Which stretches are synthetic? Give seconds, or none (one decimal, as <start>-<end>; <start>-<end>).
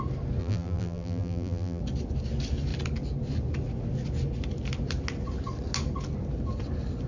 0.4-1.8